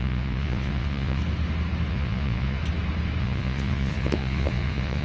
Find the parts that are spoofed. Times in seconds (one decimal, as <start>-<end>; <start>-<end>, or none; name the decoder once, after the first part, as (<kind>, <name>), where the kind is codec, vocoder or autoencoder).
0.0-1.2 (vocoder, Vocos); 1.9-2.6; 3.2-5.0